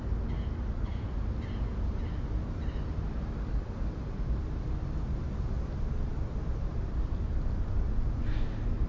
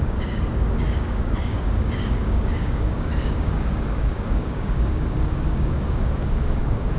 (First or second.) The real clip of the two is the first